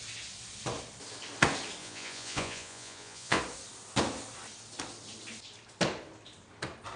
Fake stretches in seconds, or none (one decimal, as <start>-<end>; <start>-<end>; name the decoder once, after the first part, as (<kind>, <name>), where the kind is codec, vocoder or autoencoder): 1.8-3.4 (vocoder, Vocos)